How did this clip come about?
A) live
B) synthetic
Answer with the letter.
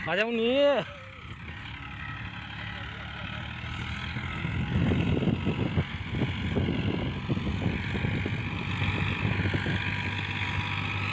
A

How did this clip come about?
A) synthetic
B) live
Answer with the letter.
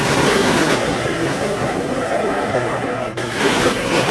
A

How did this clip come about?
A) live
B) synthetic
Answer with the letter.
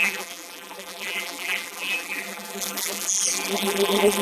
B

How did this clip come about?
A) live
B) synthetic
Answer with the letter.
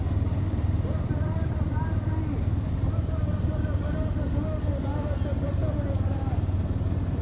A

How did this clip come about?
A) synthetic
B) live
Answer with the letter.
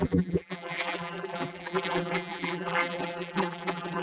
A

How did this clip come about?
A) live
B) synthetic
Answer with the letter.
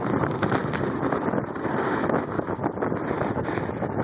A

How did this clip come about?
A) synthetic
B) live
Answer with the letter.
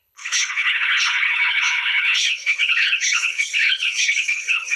A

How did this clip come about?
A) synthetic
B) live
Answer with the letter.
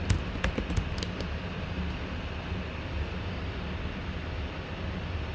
B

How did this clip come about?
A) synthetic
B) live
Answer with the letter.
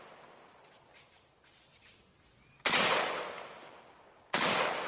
B